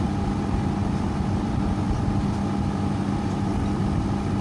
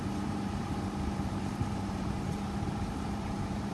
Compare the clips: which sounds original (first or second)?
first